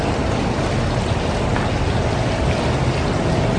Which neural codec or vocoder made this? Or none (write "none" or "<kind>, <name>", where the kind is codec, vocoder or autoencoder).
none